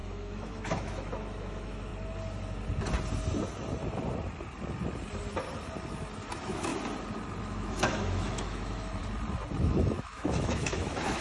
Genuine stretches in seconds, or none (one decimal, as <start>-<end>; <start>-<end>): 1.9-6.3; 6.7-7.4; 9.0-9.6